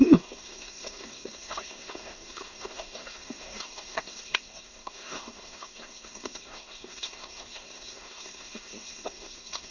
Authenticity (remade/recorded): remade